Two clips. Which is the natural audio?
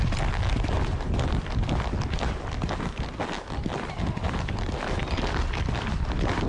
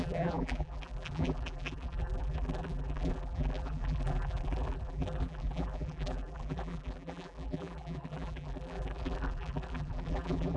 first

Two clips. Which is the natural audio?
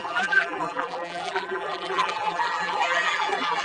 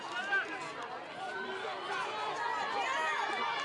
second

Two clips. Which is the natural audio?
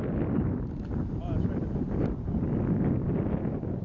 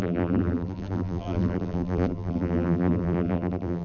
first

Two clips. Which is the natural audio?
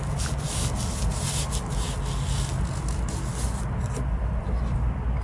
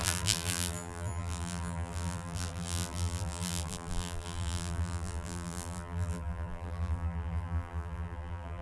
first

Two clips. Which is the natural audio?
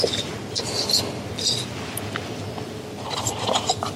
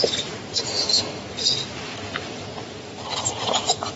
first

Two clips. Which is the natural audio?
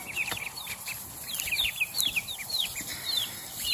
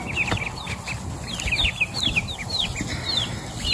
second